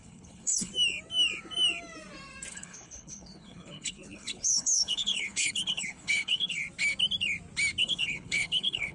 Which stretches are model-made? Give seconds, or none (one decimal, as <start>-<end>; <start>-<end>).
0.0-0.7; 2.5-6.6; 7.8-8.9